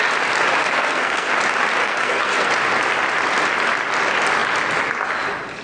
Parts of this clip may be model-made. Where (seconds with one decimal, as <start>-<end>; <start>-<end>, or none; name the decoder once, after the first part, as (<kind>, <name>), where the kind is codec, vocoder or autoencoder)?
0.6-1.3 (codec, SNAC); 1.8-2.5